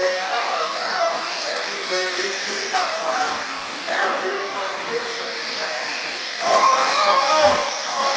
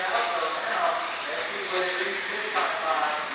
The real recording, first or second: second